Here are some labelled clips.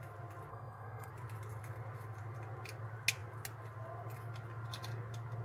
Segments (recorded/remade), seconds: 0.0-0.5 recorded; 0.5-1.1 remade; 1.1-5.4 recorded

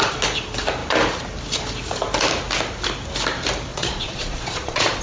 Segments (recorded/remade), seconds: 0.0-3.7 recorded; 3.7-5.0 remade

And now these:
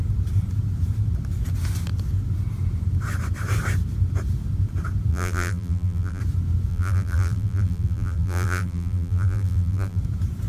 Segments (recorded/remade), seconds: 0.0-5.1 recorded; 5.1-6.2 remade; 6.2-6.7 recorded; 6.7-10.0 remade; 10.0-10.5 recorded